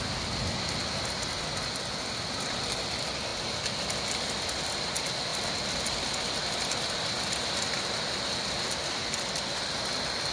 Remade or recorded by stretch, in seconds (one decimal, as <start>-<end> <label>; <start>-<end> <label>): 0.0-10.3 recorded